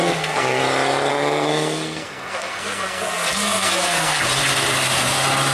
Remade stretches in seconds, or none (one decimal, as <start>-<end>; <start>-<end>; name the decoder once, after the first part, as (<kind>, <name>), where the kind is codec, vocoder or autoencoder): 0.0-0.6 (codec, SNAC); 1.1-4.2